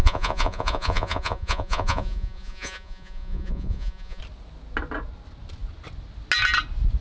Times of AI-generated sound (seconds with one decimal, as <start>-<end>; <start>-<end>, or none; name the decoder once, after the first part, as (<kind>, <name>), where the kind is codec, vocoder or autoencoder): 0.0-4.2 (vocoder, Vocos)